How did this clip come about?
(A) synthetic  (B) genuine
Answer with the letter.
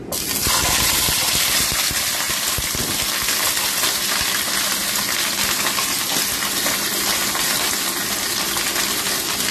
B